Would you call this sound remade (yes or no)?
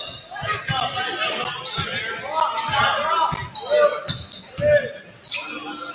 no